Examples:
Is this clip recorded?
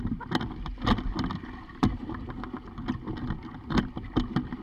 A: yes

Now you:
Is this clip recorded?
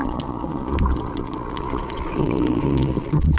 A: no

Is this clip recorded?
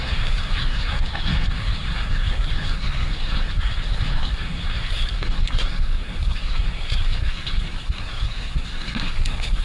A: no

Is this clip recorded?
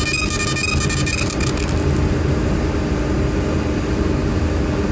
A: yes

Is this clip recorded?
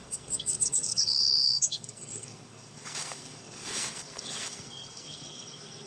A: no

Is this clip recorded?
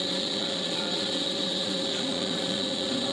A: no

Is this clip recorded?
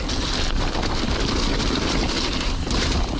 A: yes